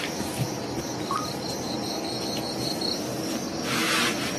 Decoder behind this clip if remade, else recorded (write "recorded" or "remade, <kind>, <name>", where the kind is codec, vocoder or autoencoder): recorded